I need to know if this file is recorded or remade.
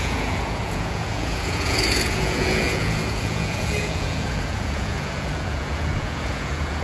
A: remade